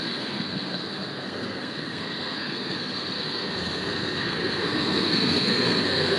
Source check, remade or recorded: remade